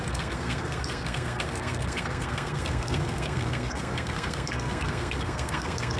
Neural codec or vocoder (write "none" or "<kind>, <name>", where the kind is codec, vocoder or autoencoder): codec, SNAC